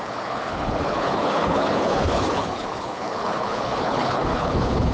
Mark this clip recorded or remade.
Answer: remade